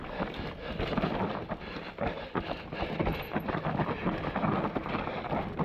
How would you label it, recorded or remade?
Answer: recorded